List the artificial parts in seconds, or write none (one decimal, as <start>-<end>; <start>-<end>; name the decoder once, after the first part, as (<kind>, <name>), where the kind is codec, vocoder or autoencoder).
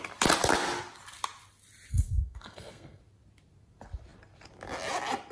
1.9-3.0 (codec, SNAC)